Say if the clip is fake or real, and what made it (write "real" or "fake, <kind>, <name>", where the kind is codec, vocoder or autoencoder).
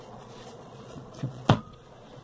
fake, vocoder, Vocos